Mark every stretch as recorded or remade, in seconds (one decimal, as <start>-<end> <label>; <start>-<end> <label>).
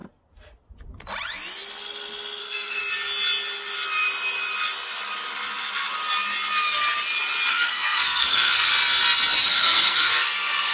0.0-2.4 recorded; 2.4-2.8 remade; 2.8-7.5 recorded; 7.5-8.7 remade; 8.7-9.4 recorded; 9.4-10.7 remade